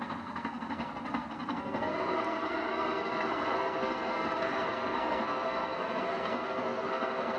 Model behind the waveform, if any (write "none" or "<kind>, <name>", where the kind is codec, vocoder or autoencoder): codec, SNAC